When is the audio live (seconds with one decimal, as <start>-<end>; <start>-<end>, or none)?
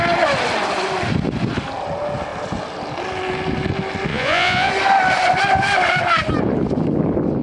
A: 0.0-4.1; 4.7-7.4